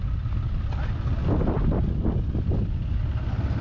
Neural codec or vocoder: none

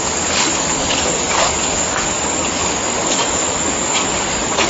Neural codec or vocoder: codec, DAC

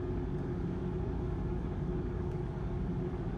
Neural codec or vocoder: codec, DAC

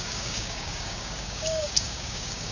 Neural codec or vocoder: codec, DAC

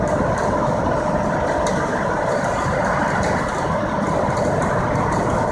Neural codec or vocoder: none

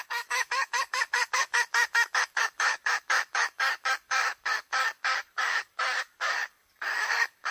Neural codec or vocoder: codec, DAC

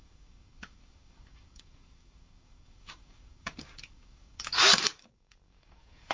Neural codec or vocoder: codec, DAC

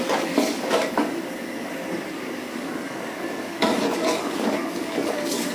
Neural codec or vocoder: codec, DAC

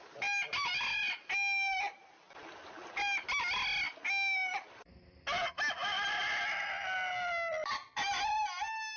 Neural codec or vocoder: none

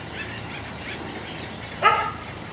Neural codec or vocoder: none